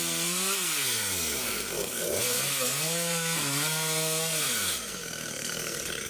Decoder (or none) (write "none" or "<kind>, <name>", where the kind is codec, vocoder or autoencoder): codec, SNAC